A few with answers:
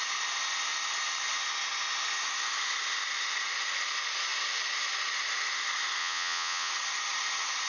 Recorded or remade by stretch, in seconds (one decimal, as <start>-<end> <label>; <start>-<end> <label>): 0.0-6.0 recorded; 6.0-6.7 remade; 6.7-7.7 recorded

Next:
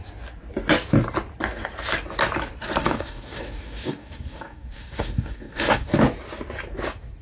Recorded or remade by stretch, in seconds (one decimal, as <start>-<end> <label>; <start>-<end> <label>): 0.0-2.8 recorded; 2.8-5.9 remade; 5.9-7.2 recorded

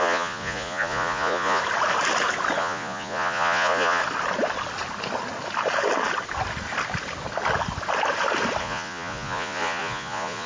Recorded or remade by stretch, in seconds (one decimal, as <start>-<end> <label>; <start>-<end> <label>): 0.0-1.6 remade; 1.6-2.6 recorded; 2.6-4.0 remade; 4.0-8.6 recorded; 8.6-10.5 remade

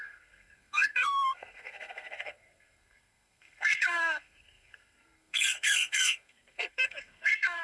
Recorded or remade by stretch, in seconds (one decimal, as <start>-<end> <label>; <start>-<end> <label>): 0.0-7.6 remade

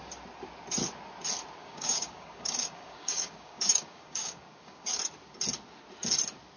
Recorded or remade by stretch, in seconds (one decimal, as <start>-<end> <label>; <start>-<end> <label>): 0.0-1.6 recorded; 1.6-5.1 remade; 5.1-6.6 recorded

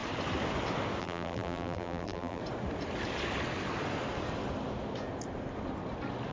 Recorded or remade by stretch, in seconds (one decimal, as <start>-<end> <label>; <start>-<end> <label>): 0.0-1.0 recorded; 1.0-2.4 remade; 2.4-6.3 recorded

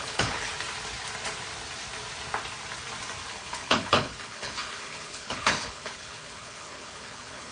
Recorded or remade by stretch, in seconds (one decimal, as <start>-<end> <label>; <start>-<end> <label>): 0.0-0.5 remade; 0.5-3.3 recorded; 3.3-7.5 remade